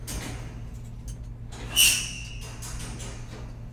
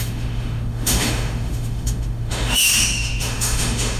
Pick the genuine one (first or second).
first